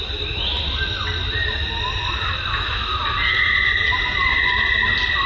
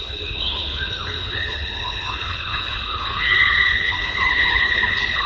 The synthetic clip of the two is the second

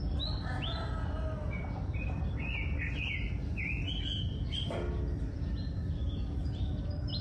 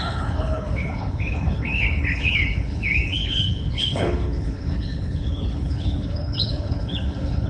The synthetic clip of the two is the second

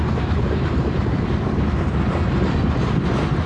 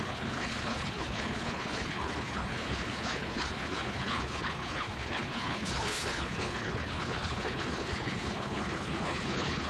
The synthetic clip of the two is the second